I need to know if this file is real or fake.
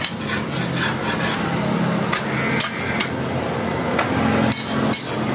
real